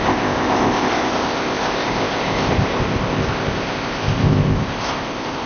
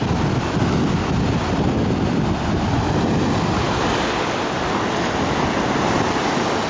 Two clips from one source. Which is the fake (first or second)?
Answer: first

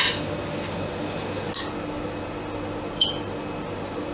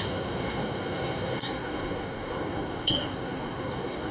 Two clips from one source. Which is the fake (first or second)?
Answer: second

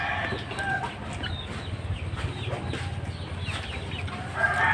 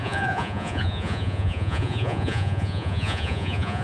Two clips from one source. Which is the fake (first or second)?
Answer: second